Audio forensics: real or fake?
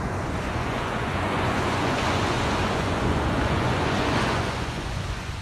fake